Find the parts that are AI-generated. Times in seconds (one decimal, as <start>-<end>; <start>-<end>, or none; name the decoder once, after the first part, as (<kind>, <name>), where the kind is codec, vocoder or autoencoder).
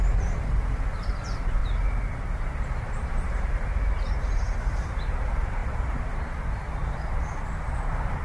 0.0-1.6 (vocoder, BigVGAN v2); 2.3-8.2